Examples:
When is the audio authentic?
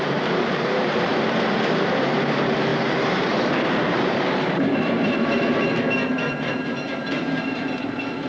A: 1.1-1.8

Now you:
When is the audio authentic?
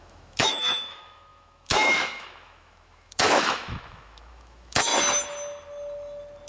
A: 4.9-6.5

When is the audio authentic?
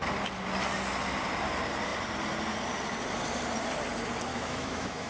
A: 0.0-4.3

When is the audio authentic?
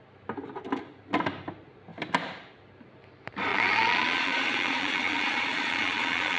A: 0.0-3.5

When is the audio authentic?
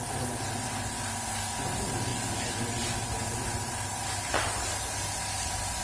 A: 0.0-5.8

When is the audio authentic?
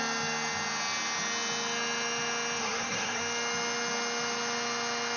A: 0.0-2.6; 3.2-5.2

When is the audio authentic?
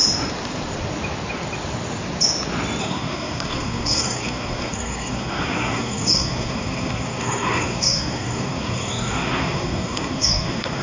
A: 0.0-2.8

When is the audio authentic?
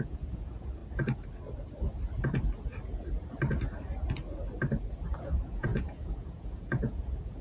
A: 0.8-5.2